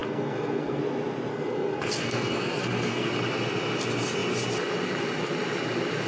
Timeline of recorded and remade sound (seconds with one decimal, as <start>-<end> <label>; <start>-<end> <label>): 0.0-0.8 remade; 0.8-1.3 recorded; 1.3-3.1 remade; 3.1-6.1 recorded

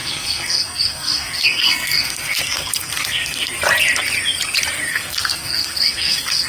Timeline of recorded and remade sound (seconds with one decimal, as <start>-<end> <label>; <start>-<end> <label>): 0.0-3.5 remade; 3.5-4.9 recorded; 4.9-6.5 remade

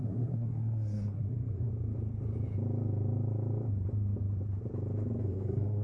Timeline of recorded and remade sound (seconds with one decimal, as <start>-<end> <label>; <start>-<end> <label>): 0.0-1.7 remade; 1.7-5.2 recorded; 5.2-5.8 remade